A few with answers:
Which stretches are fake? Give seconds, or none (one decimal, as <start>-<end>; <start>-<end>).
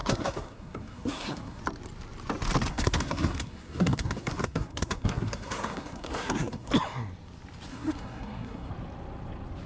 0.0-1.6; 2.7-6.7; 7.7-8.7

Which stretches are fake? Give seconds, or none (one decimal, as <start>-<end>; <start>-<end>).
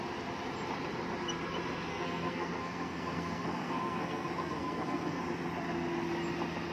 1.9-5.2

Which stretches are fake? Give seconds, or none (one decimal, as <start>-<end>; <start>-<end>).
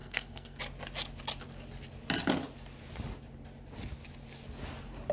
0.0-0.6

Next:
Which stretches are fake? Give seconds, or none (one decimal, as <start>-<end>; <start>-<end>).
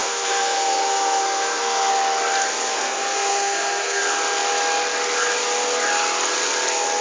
0.0-1.9; 2.7-4.0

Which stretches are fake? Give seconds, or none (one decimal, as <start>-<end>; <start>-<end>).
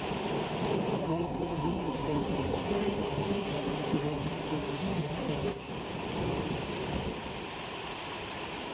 1.0-5.7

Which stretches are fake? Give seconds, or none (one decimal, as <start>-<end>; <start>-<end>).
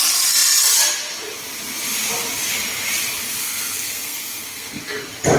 3.4-5.0